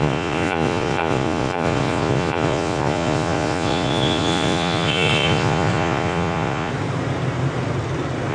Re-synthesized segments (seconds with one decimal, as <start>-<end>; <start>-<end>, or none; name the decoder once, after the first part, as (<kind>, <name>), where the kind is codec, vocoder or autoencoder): 0.0-6.7 (vocoder, Vocos)